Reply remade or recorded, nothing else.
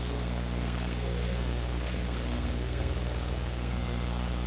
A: remade